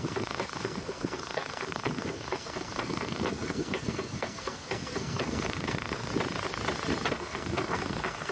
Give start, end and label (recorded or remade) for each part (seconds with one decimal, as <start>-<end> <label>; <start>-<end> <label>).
0.0-6.1 remade; 6.1-7.1 recorded; 7.1-8.3 remade